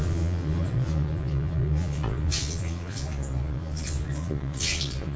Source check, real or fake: fake